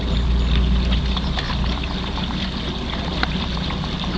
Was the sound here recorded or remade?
recorded